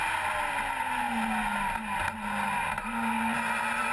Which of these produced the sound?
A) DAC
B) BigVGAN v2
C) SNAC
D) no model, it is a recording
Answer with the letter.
D